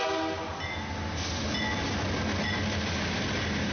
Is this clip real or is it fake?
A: real